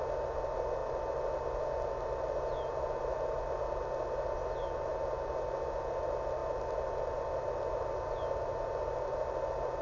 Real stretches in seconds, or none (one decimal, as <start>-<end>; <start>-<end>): 0.0-9.8